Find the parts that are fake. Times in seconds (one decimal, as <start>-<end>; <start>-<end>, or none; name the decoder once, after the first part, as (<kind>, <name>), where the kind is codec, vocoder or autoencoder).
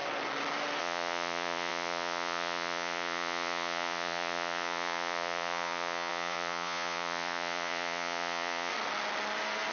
0.8-8.7 (vocoder, Vocos)